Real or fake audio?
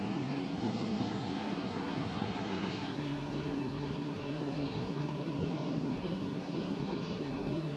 fake